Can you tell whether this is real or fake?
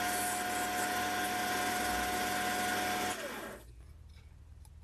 real